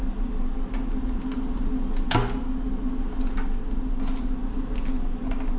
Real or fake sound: real